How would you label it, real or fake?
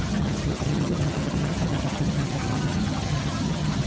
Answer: fake